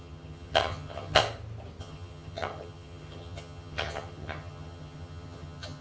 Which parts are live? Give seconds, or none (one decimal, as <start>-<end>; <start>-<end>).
1.2-1.8